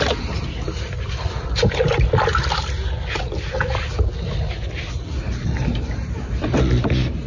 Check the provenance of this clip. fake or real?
real